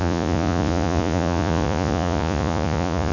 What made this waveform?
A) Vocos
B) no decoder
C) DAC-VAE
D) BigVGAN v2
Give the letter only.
A